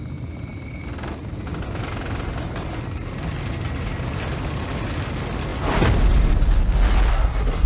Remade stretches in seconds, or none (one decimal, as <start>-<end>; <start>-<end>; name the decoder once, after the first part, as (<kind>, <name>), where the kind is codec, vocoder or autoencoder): 7.1-7.7 (codec, SNAC)